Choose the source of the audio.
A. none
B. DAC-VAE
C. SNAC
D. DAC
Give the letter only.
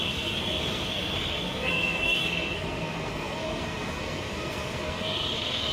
C